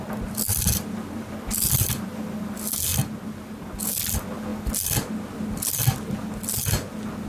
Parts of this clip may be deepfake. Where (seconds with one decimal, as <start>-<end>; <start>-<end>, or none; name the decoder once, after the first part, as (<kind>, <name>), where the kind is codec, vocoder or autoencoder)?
0.5-2.2 (vocoder, BigVGAN v2)